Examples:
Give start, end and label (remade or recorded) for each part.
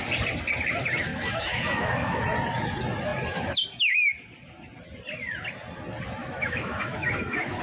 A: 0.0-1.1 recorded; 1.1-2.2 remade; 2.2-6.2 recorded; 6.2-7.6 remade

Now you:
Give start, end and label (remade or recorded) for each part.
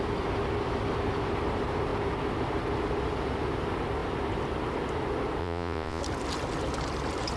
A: 0.0-5.4 recorded; 5.4-6.0 remade; 6.0-7.4 recorded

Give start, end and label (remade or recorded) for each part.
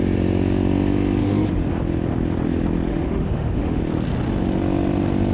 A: 0.0-1.2 recorded; 1.2-1.7 remade; 1.7-2.9 recorded; 2.9-3.8 remade; 3.8-5.3 recorded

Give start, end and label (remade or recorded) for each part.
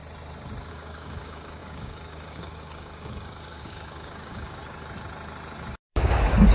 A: 0.0-0.7 recorded; 0.7-4.6 remade; 4.6-5.9 recorded; 5.9-6.5 remade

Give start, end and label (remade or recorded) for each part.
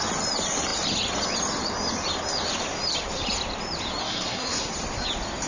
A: 0.0-4.0 recorded; 4.0-4.7 remade; 4.7-5.5 recorded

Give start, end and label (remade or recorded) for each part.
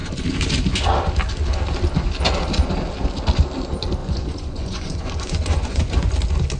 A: 0.0-4.0 recorded; 4.0-6.1 remade; 6.1-6.6 recorded